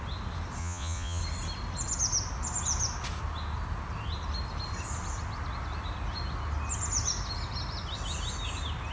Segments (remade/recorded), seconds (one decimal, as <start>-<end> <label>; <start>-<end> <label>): 0.0-0.6 recorded; 0.6-1.2 remade; 1.2-8.9 recorded